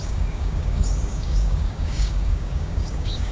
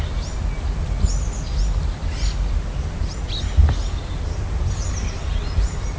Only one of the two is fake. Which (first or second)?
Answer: first